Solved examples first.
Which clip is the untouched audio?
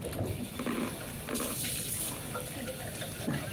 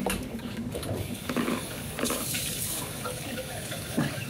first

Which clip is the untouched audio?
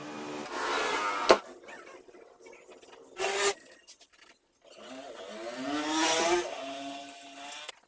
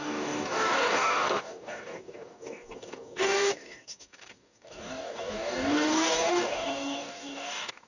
first